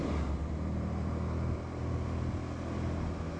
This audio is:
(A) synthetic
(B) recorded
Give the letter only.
B